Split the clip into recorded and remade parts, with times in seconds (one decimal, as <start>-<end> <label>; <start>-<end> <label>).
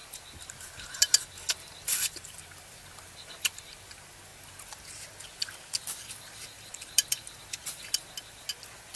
0.0-9.0 recorded